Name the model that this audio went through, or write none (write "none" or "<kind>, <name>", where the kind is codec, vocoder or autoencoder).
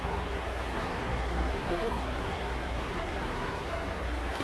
codec, SNAC